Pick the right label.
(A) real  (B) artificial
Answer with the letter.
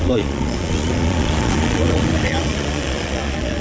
B